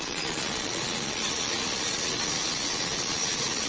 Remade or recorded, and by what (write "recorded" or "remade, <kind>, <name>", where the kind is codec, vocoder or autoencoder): remade, vocoder, Vocos